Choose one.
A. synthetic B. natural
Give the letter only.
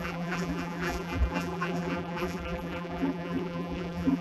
A